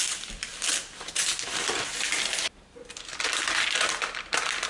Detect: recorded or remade recorded